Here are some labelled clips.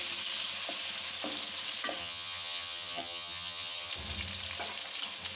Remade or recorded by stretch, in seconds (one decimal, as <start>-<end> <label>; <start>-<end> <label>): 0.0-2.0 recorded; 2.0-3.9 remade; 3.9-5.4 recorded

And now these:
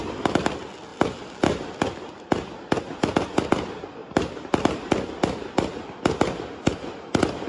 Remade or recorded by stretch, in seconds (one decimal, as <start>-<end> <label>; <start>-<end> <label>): 0.0-4.0 recorded; 4.0-4.9 remade; 4.9-7.5 recorded

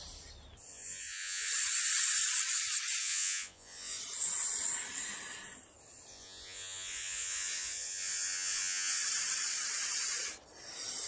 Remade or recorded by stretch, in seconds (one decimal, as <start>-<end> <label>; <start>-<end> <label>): 0.0-0.7 recorded; 0.7-1.5 remade; 1.5-3.0 recorded; 3.0-4.0 remade; 4.0-6.1 recorded; 6.1-9.0 remade; 9.0-11.1 recorded

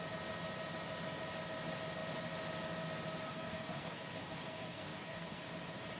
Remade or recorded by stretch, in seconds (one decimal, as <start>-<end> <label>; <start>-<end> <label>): 0.0-3.3 recorded; 3.3-5.4 remade; 5.4-6.0 recorded